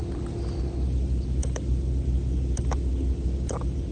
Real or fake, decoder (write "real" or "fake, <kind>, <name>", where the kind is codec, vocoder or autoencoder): real